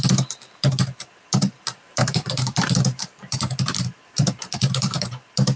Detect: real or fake fake